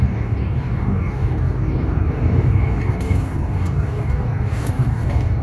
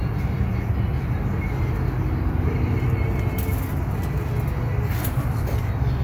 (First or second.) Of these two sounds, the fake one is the first